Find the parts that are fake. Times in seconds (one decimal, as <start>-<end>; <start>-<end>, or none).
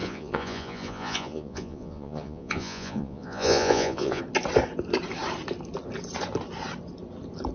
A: 0.0-4.2